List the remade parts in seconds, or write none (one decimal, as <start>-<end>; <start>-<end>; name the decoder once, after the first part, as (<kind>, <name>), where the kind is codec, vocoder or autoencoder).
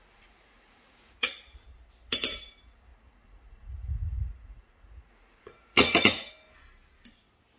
0.0-1.3 (vocoder, Vocos); 2.9-6.3